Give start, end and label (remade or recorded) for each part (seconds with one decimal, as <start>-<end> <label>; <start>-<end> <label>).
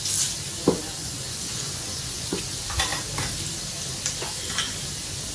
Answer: 0.0-1.0 recorded; 1.0-2.4 remade; 2.4-5.3 recorded